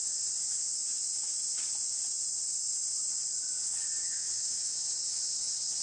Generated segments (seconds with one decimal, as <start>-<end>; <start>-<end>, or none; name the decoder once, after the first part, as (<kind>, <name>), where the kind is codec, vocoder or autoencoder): 0.0-0.7 (vocoder, WaveNeXt); 3.1-5.8